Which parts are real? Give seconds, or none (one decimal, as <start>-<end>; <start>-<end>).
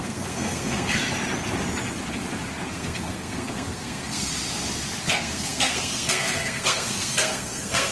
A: 1.0-2.7; 4.3-5.0